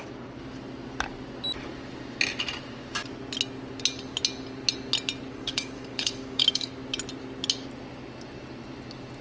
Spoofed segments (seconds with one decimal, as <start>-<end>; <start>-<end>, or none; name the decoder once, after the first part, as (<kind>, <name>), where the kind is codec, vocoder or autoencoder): 5.3-6.7 (codec, DAC)